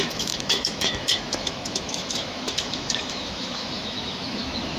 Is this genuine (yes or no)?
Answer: no